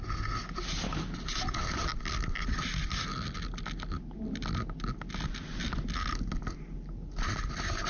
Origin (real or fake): real